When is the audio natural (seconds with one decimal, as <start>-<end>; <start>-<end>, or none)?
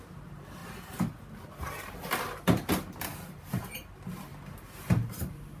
0.0-3.1; 3.6-5.6